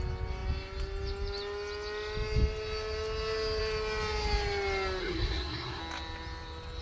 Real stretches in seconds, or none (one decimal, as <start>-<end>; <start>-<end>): 0.0-5.0; 5.8-6.8